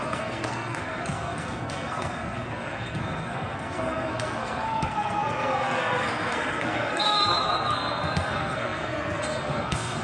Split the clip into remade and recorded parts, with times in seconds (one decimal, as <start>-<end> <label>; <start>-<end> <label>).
0.0-10.0 remade